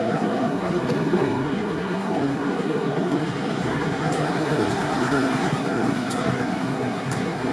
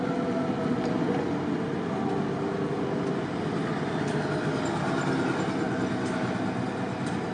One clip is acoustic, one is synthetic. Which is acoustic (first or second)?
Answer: second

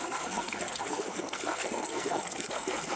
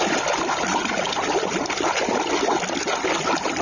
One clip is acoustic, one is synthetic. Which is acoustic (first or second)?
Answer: second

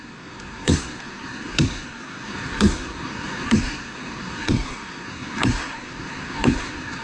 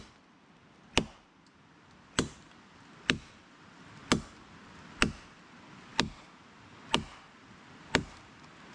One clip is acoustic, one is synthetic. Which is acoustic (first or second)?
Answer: second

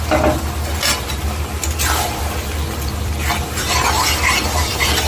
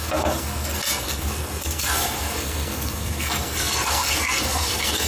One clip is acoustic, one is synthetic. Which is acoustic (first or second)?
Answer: first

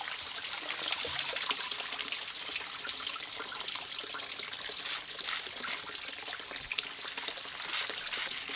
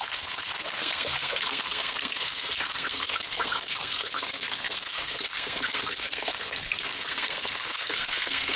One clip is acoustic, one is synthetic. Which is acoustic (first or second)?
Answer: first